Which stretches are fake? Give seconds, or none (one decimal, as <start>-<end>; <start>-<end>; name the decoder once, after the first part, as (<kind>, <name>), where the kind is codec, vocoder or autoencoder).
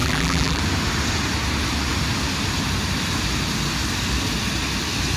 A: 0.0-0.6 (vocoder, BigVGAN v2)